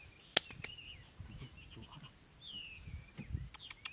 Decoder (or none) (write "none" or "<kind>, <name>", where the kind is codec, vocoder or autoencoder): none